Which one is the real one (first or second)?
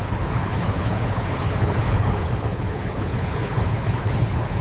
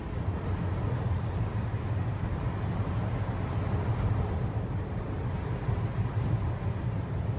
second